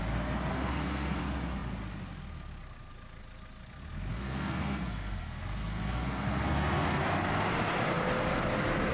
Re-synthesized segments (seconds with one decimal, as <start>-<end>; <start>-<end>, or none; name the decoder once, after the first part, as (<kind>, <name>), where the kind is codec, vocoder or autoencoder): 0.5-1.2 (codec, SNAC); 4.1-7.0